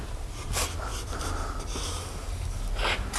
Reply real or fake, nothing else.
real